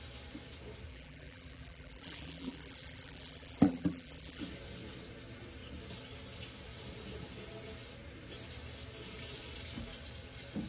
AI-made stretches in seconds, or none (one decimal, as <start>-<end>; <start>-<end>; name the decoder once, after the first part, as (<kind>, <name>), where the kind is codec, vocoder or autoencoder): 0.9-4.4 (vocoder, BigVGAN v2)